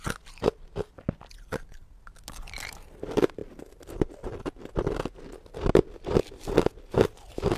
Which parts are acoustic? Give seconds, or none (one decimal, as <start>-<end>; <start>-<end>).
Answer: 0.0-7.6